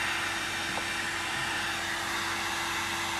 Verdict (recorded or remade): recorded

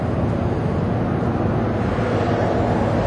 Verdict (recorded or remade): recorded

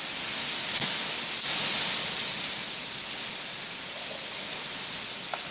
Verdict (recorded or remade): recorded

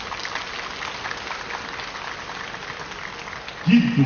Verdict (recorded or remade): recorded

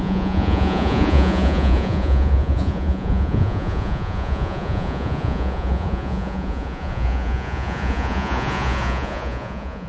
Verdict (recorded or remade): remade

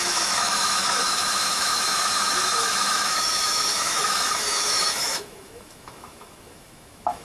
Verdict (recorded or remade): remade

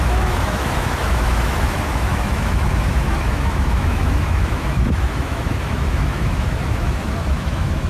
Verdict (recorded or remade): remade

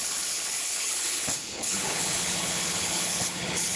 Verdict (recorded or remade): remade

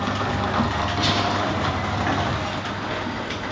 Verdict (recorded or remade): recorded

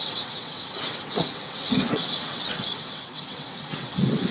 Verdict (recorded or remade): remade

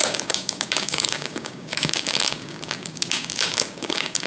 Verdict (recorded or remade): remade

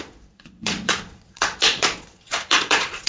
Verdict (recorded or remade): remade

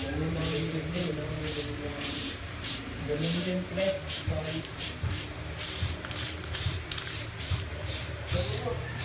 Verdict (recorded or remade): remade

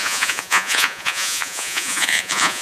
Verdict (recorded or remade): remade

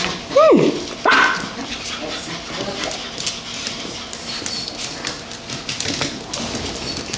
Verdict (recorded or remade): recorded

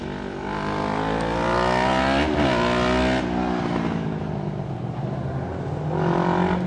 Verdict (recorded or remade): recorded